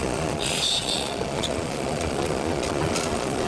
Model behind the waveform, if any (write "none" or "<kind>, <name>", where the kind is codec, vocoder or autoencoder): vocoder, Vocos